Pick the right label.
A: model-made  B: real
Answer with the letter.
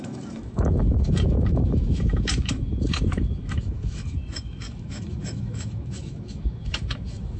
A